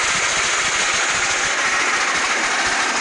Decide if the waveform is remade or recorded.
recorded